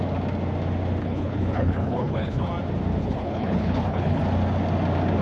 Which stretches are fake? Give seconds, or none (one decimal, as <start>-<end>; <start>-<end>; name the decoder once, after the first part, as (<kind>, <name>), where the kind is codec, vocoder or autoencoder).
1.0-2.5 (codec, HILCodec); 3.0-4.2